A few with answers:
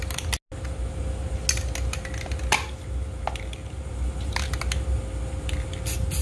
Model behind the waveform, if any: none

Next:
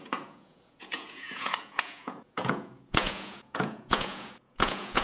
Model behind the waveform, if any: vocoder, Vocos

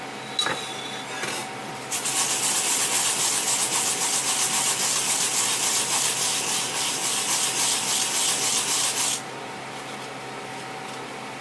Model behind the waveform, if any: none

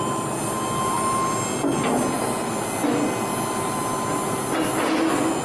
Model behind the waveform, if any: none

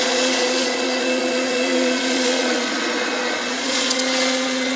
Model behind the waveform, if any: vocoder, Vocos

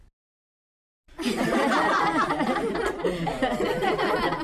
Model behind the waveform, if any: none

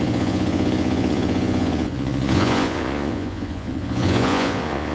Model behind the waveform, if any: vocoder, Vocos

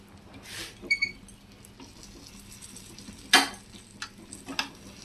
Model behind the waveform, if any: none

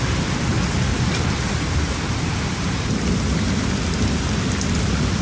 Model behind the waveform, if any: none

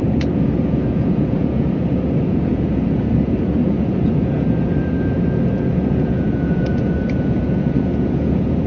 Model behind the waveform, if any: vocoder, Vocos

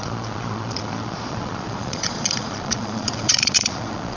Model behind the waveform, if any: vocoder, Vocos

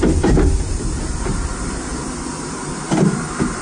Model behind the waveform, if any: none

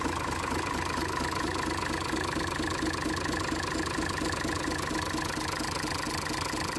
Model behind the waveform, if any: none